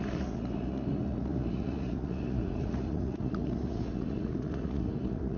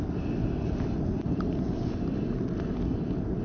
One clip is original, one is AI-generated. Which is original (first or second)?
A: second